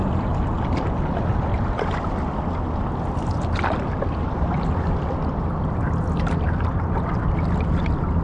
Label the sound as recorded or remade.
recorded